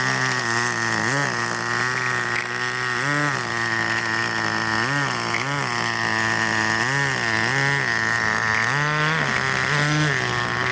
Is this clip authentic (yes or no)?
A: yes